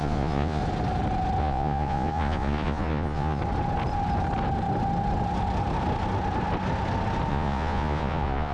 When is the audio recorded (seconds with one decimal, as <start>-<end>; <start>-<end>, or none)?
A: 0.6-1.4; 3.4-7.3

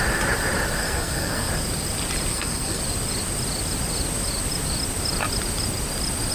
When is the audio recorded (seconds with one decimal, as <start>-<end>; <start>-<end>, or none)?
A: 0.0-0.8; 1.5-2.3; 2.8-6.3

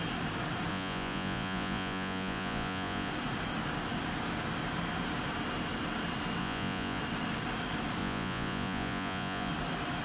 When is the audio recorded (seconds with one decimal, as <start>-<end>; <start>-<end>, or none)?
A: 0.0-0.7; 3.1-6.4; 7.0-8.0; 9.5-10.0

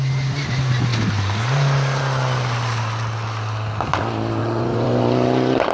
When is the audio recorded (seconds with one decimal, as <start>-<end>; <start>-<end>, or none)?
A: 0.0-4.4; 5.0-5.7

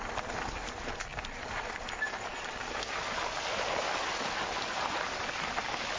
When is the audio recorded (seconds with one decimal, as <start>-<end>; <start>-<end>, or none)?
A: 0.0-1.1; 1.9-2.3

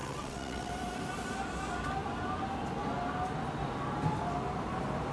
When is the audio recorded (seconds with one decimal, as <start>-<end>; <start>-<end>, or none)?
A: 0.7-5.1

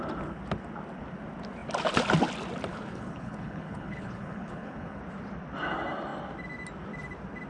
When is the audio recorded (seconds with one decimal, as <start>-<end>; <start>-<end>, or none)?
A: 0.0-2.7; 5.0-7.5

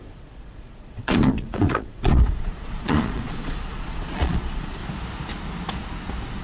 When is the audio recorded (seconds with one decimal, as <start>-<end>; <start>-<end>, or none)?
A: 4.8-6.4